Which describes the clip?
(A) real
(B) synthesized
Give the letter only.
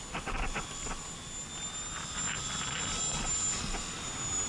A